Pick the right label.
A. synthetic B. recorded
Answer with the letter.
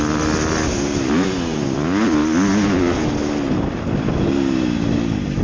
B